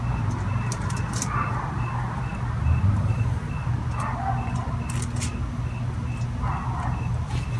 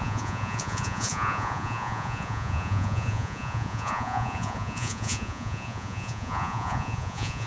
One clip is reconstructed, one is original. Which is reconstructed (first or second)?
second